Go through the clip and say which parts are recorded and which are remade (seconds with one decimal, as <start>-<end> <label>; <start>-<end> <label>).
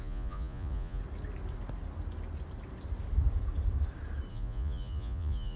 0.0-1.0 remade; 1.0-4.3 recorded; 4.3-5.6 remade